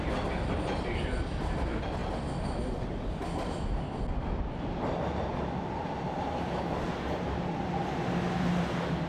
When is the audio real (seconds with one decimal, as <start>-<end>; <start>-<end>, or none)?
0.0-9.1